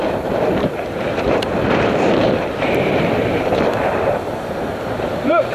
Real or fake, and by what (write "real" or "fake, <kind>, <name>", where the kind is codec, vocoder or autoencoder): fake, vocoder, BigVGAN v2